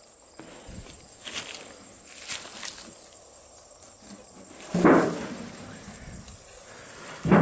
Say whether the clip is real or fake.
real